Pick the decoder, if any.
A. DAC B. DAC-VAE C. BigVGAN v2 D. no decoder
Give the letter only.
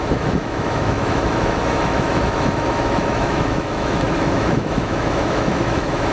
B